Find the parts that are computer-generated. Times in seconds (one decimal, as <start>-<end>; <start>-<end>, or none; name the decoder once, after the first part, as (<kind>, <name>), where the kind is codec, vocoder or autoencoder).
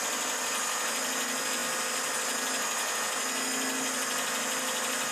none